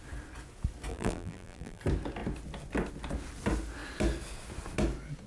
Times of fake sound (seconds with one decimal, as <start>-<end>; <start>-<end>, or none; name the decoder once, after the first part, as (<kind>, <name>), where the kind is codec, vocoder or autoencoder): 0.9-1.8 (vocoder, BigVGAN v2)